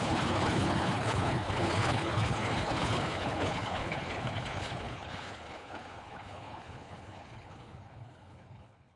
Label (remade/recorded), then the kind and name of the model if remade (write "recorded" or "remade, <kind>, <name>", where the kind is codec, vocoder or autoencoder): remade, codec, HILCodec